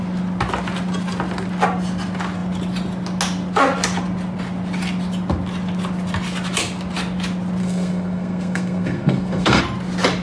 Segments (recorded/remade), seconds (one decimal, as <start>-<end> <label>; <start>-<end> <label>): 0.0-7.6 recorded; 7.6-9.6 remade; 9.6-10.2 recorded